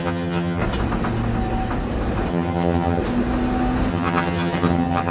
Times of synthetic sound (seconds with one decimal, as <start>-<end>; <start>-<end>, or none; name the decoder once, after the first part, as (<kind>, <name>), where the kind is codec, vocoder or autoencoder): 0.0-0.6 (vocoder, HiFi-GAN); 2.3-3.0; 3.9-5.1